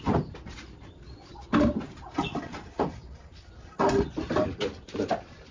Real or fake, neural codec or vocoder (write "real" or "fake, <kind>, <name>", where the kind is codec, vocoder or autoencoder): real